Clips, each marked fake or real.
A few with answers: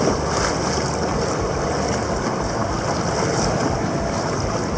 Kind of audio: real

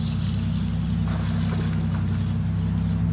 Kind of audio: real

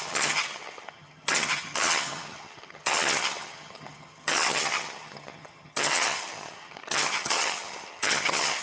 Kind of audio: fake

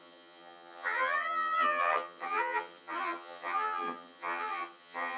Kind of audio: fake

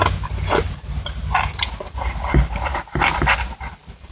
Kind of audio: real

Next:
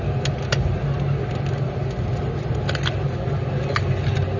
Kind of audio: real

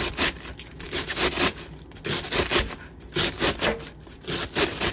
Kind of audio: real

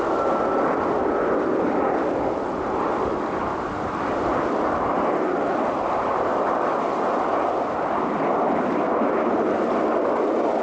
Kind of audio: real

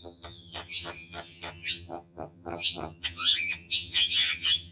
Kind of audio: fake